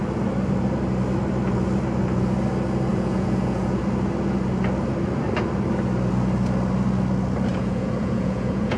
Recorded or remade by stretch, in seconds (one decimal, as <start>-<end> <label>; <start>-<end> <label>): 0.0-2.9 recorded; 2.9-3.8 remade; 3.8-7.5 recorded; 7.5-8.8 remade